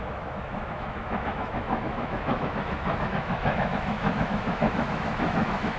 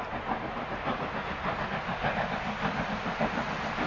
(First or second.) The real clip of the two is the second